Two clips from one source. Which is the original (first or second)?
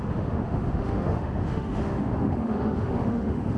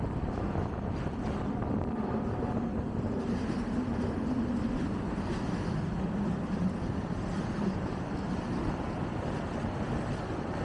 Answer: second